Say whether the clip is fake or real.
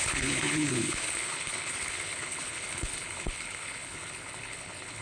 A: fake